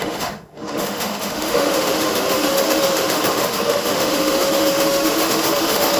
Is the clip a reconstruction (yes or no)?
yes